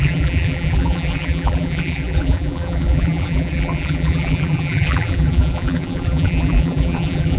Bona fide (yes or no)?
no